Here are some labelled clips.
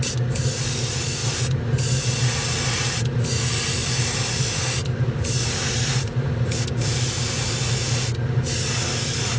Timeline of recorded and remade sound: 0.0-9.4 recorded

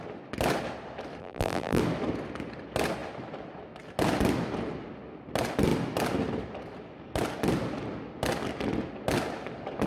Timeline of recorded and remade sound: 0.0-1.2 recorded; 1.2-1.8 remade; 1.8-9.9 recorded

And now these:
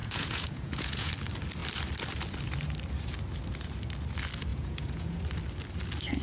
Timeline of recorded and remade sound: 0.0-1.1 remade; 1.1-4.5 recorded; 4.5-5.2 remade; 5.2-6.2 recorded

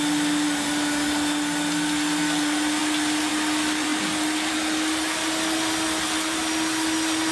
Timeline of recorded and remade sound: 0.0-7.3 recorded